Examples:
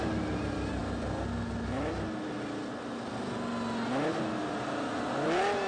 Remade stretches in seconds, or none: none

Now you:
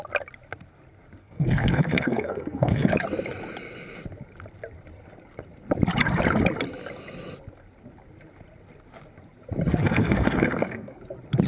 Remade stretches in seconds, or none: 1.2-2.9 (codec, SNAC); 9.7-11.0

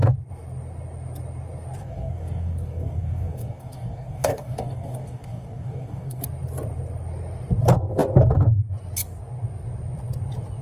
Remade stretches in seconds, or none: 1.8-6.2 (codec, DAC)